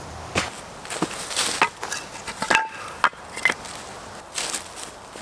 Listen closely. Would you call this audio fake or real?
real